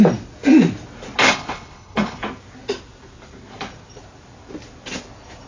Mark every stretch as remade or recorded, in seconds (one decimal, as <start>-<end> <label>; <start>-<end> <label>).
0.0-1.2 recorded; 1.2-2.2 remade; 2.2-5.5 recorded